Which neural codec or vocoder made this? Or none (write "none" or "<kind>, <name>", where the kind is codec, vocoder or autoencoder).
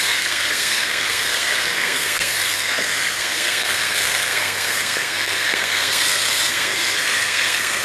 codec, SNAC